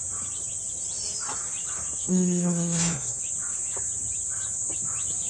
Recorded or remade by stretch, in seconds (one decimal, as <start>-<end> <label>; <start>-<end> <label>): 0.0-2.0 recorded; 2.0-3.2 remade; 3.2-5.3 recorded